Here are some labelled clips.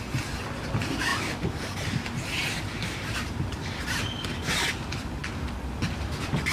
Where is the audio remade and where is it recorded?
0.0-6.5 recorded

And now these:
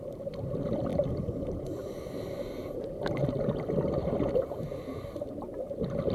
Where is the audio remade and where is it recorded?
0.0-0.9 recorded; 0.9-2.1 remade; 2.1-6.1 recorded